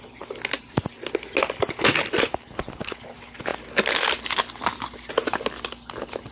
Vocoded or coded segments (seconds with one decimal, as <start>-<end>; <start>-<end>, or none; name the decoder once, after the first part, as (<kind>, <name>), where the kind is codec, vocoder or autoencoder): none